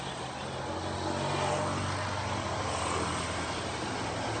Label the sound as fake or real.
real